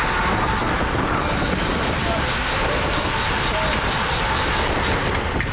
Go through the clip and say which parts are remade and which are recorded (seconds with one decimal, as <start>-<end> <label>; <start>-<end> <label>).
0.0-5.5 recorded